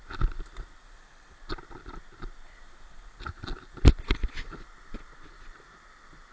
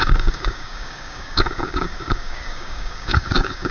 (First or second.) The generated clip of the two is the second